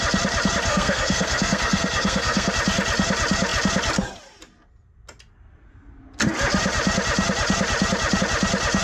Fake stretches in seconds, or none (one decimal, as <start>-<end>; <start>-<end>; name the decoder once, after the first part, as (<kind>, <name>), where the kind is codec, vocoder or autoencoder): 0.7-2.5 (codec, SNAC)